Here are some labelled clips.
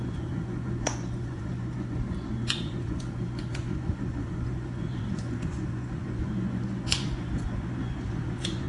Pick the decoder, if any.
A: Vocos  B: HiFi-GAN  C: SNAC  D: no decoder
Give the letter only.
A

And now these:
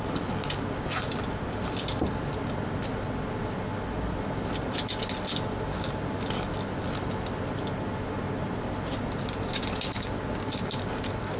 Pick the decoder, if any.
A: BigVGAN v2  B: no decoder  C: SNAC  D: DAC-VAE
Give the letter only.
B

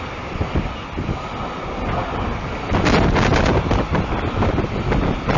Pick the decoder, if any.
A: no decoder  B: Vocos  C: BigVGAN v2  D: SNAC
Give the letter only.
A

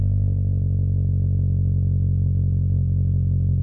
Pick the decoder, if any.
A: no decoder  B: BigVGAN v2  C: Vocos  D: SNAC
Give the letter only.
A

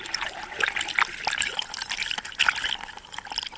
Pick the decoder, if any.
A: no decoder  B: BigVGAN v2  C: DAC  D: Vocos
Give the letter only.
A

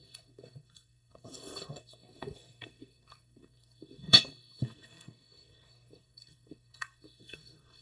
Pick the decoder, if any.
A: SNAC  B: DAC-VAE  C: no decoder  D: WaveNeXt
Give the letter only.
A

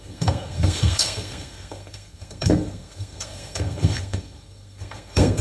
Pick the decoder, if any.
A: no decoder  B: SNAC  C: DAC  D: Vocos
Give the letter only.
B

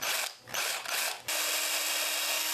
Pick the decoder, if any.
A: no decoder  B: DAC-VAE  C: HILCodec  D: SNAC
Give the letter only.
A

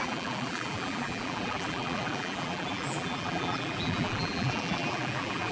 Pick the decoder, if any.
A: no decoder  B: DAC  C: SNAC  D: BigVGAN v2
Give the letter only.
D